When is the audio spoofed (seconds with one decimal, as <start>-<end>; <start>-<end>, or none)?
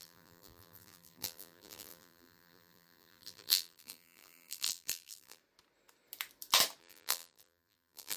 0.0-5.4; 6.8-8.2